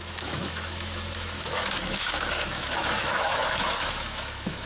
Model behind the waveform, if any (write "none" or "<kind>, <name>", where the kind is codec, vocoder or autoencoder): autoencoder, DAC-VAE